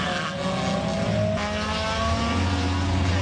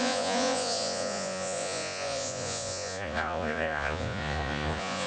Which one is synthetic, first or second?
second